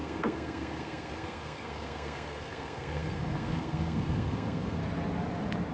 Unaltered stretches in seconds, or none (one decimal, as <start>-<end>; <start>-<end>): 4.8-5.7